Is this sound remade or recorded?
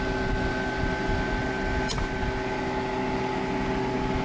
recorded